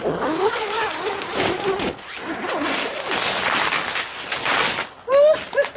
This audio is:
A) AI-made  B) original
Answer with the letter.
B